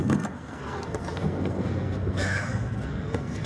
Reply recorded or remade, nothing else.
remade